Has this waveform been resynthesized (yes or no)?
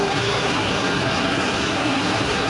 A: yes